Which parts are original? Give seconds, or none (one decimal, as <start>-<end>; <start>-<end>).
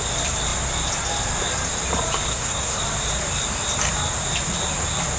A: 0.0-2.3; 2.8-5.2